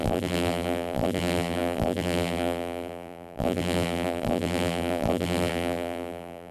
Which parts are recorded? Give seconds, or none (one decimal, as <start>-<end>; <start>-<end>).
none